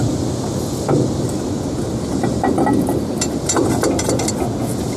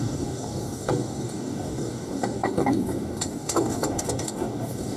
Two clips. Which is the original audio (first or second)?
first